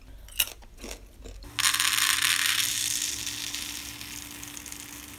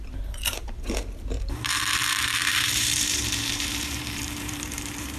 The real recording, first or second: first